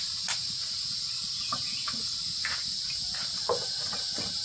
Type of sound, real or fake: real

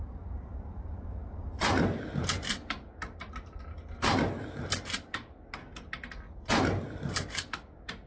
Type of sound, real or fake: real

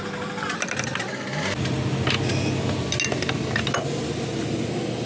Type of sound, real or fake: real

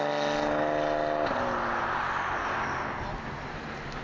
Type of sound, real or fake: real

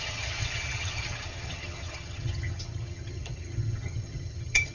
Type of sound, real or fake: fake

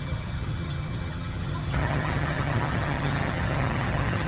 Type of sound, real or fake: fake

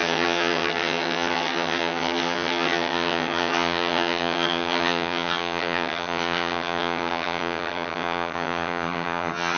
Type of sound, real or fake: fake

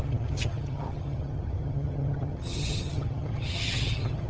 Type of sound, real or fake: fake